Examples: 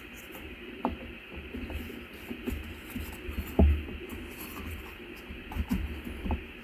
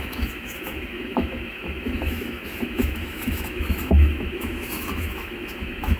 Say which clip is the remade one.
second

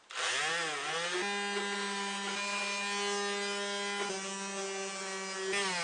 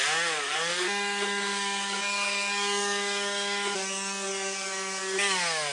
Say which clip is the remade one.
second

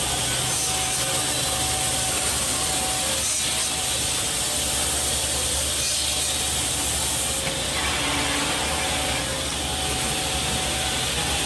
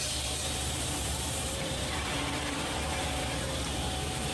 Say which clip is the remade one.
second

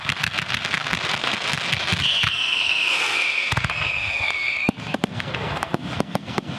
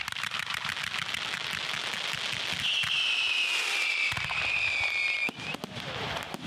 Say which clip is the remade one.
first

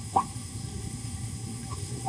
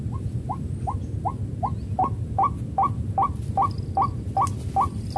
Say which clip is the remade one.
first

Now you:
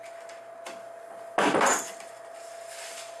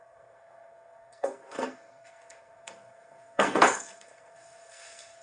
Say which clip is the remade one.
second